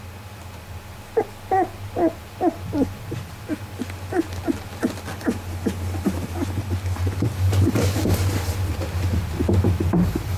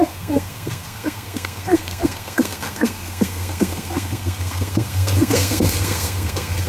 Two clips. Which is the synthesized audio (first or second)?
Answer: second